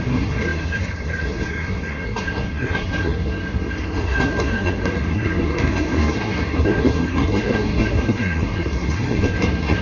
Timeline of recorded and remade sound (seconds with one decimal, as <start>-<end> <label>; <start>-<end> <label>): 0.0-9.8 remade